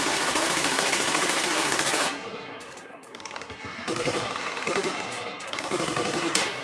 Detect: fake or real fake